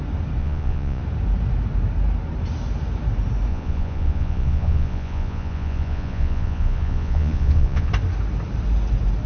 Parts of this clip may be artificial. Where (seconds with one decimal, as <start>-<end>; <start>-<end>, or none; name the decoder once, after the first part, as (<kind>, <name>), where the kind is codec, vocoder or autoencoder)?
0.4-1.0 (vocoder, Vocos); 3.5-7.9